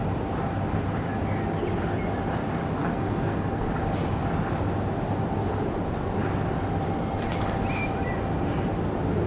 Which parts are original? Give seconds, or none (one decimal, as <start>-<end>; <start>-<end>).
0.0-2.8; 3.7-9.3